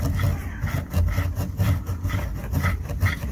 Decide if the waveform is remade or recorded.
recorded